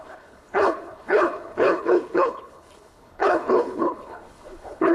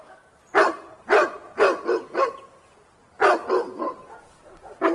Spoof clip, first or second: first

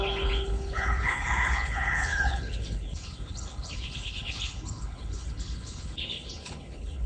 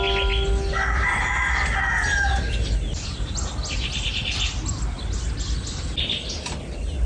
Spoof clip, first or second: first